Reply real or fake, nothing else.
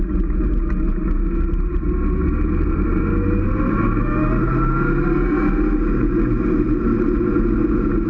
real